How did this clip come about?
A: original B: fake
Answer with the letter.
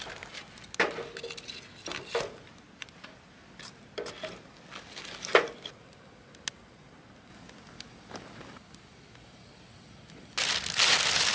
A